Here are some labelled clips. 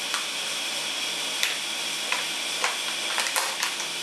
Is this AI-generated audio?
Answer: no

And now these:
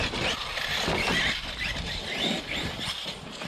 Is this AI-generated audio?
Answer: yes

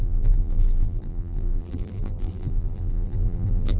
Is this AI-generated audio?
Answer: yes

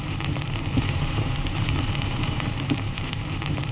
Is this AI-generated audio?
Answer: yes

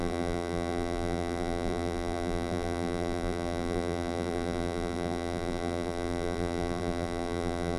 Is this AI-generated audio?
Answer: yes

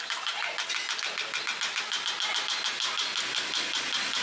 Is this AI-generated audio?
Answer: no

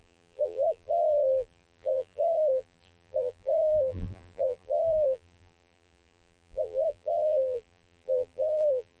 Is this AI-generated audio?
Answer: yes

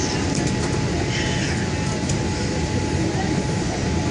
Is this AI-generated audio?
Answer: no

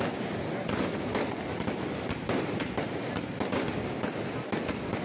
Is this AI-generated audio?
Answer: no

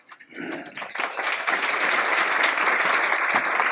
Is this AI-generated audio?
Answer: no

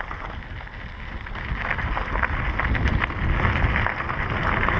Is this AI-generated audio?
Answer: no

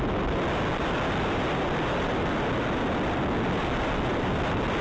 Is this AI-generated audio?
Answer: no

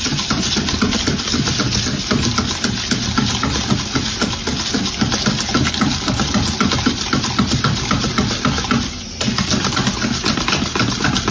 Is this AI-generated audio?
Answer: no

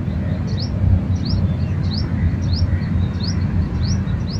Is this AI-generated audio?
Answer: no